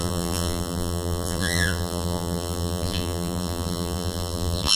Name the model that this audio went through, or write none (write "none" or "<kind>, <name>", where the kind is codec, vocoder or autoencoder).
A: vocoder, BigVGAN v2